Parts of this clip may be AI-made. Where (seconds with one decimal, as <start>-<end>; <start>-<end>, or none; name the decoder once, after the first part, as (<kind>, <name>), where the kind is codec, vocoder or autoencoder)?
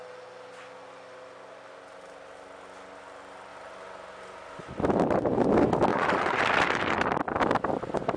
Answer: 5.9-6.4 (vocoder, Vocos)